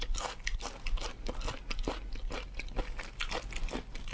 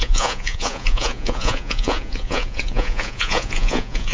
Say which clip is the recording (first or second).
first